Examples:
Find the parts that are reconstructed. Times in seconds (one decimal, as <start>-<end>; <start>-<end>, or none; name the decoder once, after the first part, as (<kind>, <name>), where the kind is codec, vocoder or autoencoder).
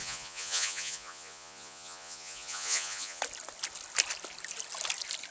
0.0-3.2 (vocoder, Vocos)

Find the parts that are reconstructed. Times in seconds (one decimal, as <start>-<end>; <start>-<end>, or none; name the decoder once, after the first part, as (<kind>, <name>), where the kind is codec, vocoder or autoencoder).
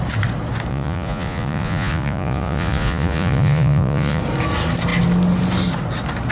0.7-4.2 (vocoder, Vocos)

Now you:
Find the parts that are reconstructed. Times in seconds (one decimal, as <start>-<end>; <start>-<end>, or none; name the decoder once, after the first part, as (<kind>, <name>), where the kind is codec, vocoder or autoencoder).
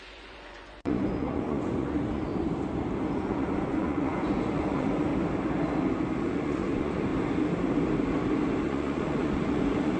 0.0-2.3 (vocoder, Vocos); 3.2-5.1; 6.2-7.1; 8.6-10.0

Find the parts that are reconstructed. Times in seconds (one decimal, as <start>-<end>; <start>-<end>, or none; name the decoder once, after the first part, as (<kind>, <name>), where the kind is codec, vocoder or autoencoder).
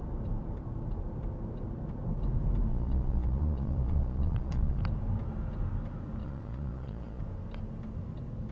2.7-4.8 (vocoder, Vocos); 6.2-7.2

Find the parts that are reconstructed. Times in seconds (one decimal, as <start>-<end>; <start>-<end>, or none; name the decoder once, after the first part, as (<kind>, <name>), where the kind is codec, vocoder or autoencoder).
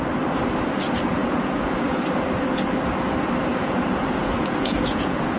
1.2-2.0 (vocoder, Vocos); 3.5-5.4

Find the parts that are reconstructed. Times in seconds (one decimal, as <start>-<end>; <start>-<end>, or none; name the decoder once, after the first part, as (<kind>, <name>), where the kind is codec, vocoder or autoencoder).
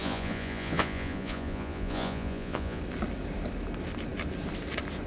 0.0-2.8 (vocoder, Vocos)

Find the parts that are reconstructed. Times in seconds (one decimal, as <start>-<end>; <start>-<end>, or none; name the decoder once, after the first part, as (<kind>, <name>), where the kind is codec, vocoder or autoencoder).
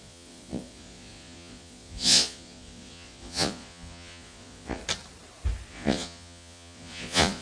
0.0-4.8 (vocoder, Vocos); 5.7-7.4